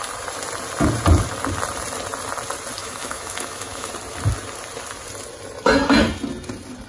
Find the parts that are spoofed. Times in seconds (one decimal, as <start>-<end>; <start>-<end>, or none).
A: 2.8-3.9